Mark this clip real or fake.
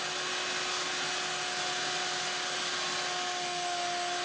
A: real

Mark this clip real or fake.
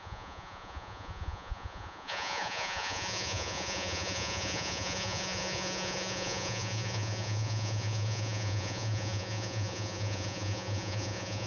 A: fake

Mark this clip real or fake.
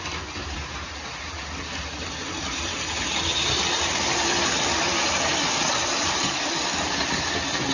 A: real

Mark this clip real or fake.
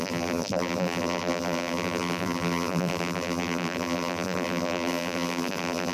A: fake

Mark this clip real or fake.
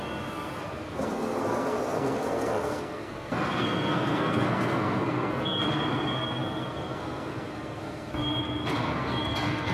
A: fake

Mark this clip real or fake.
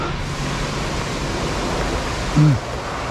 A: real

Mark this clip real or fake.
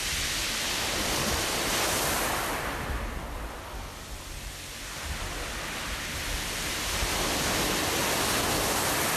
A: real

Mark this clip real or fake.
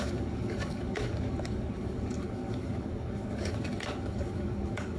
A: fake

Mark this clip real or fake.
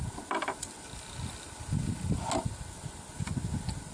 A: real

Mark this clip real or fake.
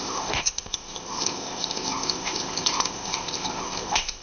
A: fake